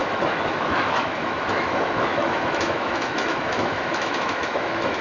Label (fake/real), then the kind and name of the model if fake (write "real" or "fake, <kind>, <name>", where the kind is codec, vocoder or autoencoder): fake, autoencoder, DAC-VAE